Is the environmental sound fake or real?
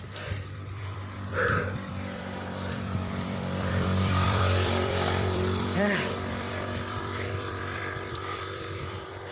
fake